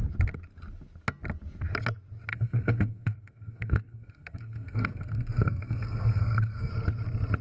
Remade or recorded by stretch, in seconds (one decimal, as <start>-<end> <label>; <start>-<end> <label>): 0.0-2.3 recorded; 2.3-6.7 remade; 6.7-7.4 recorded